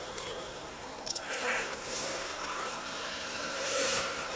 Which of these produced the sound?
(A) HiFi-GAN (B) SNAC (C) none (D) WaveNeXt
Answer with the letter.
B